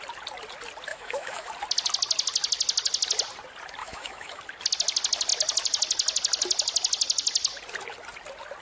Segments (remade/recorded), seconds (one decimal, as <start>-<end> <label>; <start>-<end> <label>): 0.0-0.9 recorded; 0.9-1.5 remade; 1.5-3.8 recorded; 3.8-4.4 remade; 4.4-8.6 recorded